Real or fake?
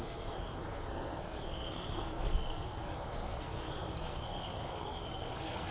fake